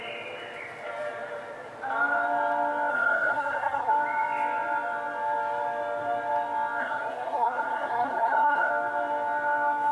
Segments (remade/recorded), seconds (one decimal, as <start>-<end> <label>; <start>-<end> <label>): 0.0-2.9 recorded; 2.9-3.9 remade; 3.9-6.8 recorded; 6.8-8.7 remade; 8.7-9.9 recorded